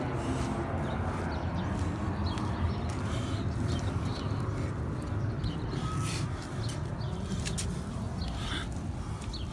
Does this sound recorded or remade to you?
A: recorded